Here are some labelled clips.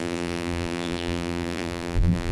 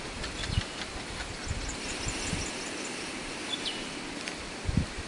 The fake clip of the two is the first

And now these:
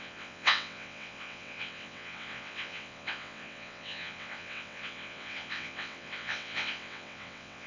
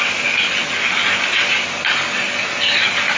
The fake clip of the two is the first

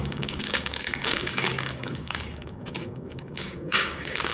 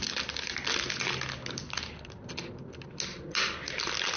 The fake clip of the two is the first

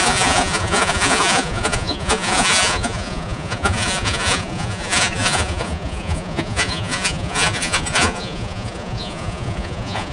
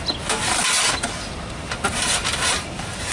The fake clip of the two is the first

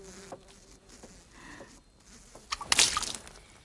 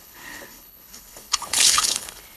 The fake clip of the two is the second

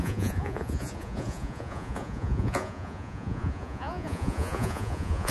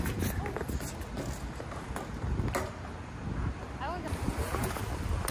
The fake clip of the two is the first